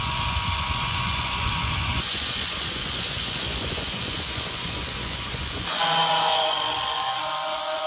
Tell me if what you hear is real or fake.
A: fake